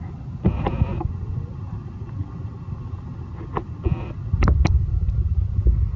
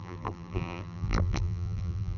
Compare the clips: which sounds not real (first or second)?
second